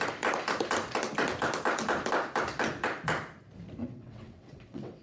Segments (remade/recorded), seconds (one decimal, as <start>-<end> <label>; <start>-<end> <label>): 0.0-3.8 recorded; 3.8-5.0 remade

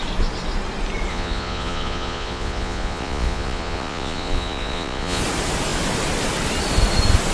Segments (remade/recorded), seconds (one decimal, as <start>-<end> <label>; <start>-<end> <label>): 0.0-1.1 recorded; 1.1-5.2 remade; 5.2-7.3 recorded